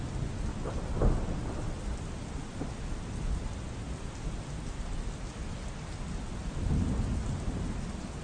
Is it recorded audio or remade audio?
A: recorded